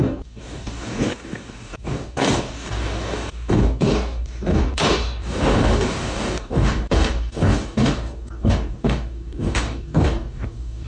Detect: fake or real fake